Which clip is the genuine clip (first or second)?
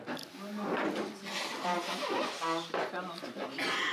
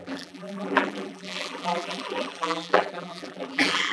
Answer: first